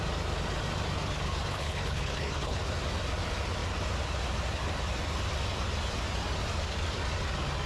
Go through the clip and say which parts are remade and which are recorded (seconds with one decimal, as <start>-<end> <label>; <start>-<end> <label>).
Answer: 0.0-1.5 recorded; 1.5-2.6 remade; 2.6-7.7 recorded